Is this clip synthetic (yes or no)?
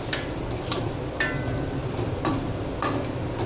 no